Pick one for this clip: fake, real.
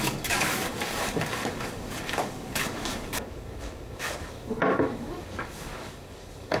fake